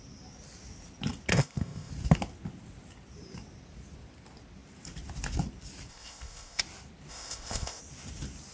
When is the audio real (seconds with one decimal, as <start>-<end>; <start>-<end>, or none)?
0.0-1.3; 1.9-5.9; 6.6-7.1; 7.8-8.5